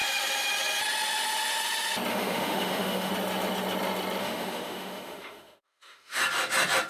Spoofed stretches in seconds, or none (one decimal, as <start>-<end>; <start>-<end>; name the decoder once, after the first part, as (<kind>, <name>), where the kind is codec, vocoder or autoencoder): 2.1-3.1 (autoencoder, DAC-VAE); 4.2-6.2